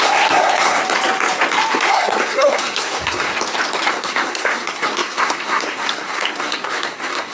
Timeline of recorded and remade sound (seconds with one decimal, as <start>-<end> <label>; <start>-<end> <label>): 0.0-0.8 remade; 0.8-1.7 recorded; 1.7-3.3 remade; 3.3-3.9 recorded; 3.9-7.3 remade